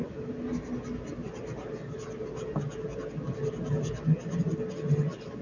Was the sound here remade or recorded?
recorded